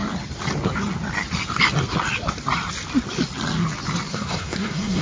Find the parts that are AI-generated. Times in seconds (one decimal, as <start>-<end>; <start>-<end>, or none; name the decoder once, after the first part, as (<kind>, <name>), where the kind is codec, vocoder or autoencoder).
4.1-5.0 (codec, SNAC)